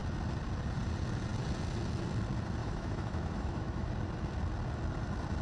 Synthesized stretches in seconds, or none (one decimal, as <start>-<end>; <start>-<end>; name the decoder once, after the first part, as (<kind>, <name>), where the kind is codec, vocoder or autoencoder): 2.6-3.9 (autoencoder, DAC-VAE)